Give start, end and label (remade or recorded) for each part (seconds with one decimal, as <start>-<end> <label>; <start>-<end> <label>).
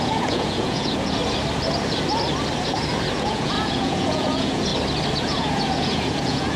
0.0-1.2 remade; 1.2-3.1 recorded; 3.1-4.7 remade; 4.7-5.2 recorded; 5.2-6.6 remade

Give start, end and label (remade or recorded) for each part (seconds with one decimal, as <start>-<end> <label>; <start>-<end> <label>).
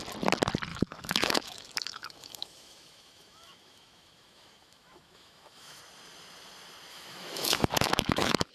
0.0-0.7 recorded; 0.7-5.8 remade; 5.8-6.9 recorded; 6.9-8.5 remade